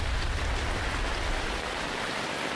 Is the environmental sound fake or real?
fake